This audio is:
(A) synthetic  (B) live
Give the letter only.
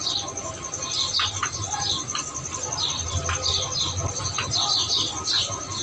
B